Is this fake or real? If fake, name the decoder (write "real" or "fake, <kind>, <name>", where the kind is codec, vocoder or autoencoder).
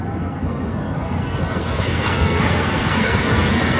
fake, codec, SNAC